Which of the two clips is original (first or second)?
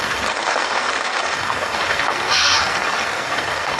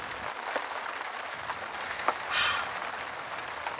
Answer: second